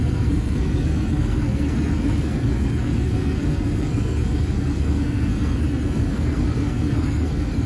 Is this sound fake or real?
fake